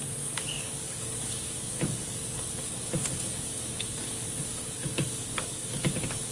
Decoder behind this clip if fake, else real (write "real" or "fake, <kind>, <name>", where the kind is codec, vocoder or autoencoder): fake, codec, DAC